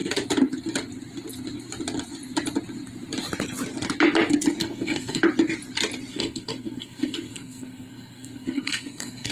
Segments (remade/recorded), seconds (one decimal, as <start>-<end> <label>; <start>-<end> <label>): 0.0-4.6 recorded; 4.6-5.2 remade; 5.2-6.1 recorded; 6.1-9.3 remade